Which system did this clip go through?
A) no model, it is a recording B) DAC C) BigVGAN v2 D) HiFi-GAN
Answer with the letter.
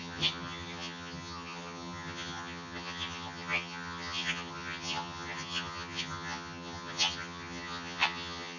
D